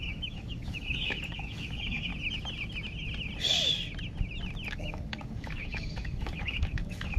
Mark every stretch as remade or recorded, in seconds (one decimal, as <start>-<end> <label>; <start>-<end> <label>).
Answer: 0.0-2.1 remade; 2.1-4.7 recorded; 4.7-7.2 remade